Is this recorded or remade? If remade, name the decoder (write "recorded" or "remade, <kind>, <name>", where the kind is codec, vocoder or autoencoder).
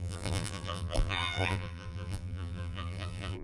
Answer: remade, vocoder, BigVGAN v2